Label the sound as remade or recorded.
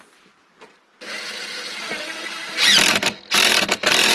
recorded